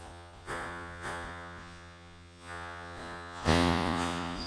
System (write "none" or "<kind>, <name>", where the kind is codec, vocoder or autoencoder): vocoder, Vocos